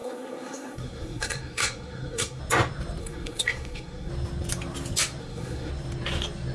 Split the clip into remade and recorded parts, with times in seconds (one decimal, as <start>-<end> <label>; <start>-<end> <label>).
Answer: 0.0-2.4 remade; 2.4-3.0 recorded; 3.0-4.1 remade; 4.1-5.2 recorded; 5.2-5.7 remade; 5.7-6.5 recorded